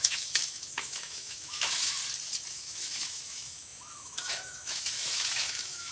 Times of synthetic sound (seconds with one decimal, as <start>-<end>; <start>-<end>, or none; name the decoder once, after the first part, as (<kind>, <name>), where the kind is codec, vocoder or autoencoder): 0.0-2.0 (autoencoder, DAC-VAE); 2.5-5.9